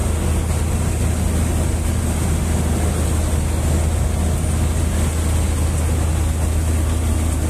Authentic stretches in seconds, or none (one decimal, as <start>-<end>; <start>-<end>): 0.0-7.5